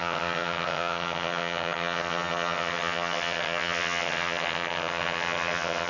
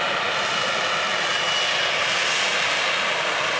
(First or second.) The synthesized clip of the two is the first